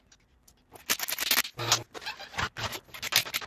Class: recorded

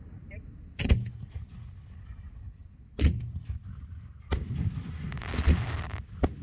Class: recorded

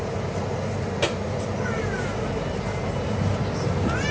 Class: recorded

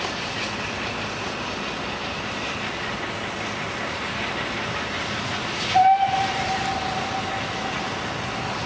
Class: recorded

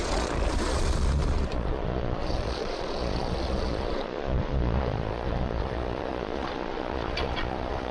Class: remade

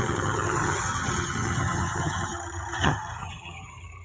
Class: remade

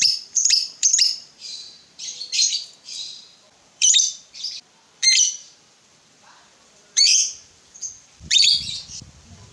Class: remade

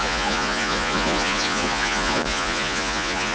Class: remade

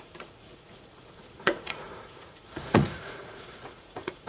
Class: remade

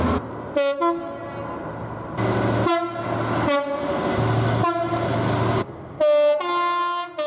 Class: recorded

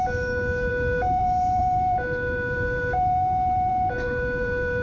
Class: remade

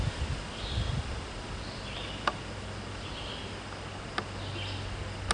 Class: recorded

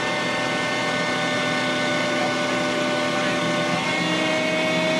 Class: recorded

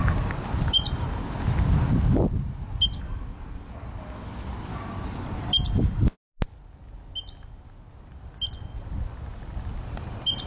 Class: recorded